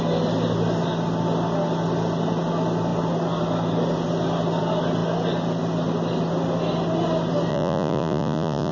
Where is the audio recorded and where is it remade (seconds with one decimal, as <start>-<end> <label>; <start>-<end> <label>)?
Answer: 0.0-7.5 recorded; 7.5-8.7 remade